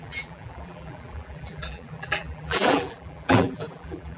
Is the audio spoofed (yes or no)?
yes